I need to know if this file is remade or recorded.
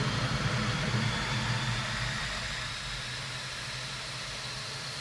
recorded